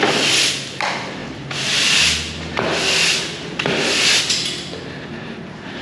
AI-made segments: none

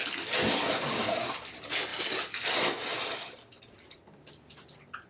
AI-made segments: none

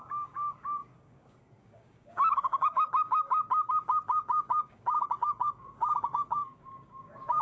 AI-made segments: 0.0-7.4

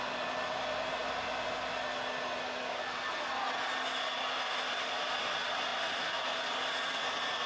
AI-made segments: none

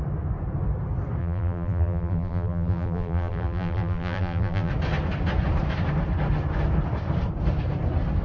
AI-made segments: 1.2-4.7

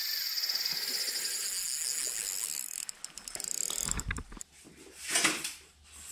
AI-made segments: none

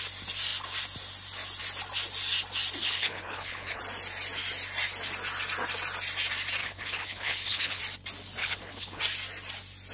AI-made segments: 2.8-3.8; 6.6-7.8; 8.4-9.0